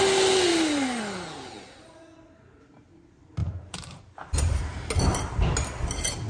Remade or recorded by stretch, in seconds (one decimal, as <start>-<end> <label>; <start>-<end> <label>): 0.0-0.5 recorded; 0.5-1.0 remade; 1.0-3.4 recorded; 3.4-4.9 remade; 4.9-6.3 recorded